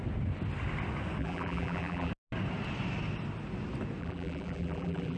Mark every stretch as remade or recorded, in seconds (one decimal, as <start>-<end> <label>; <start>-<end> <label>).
0.0-1.2 recorded; 1.2-2.1 remade; 2.1-4.0 recorded; 4.0-5.2 remade